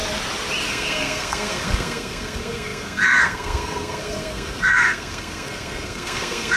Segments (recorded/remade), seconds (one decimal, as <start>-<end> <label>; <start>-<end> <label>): 0.0-0.7 recorded; 0.7-6.6 remade